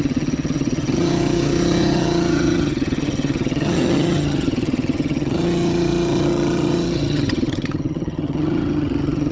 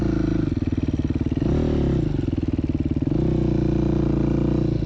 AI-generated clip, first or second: first